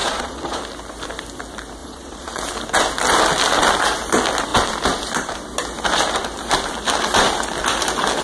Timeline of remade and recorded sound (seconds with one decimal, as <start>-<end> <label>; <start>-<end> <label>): 0.0-0.6 remade; 0.6-1.8 recorded; 1.8-2.4 remade; 2.4-8.2 recorded